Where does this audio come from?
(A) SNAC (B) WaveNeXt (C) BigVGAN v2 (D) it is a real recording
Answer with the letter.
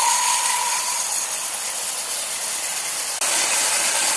D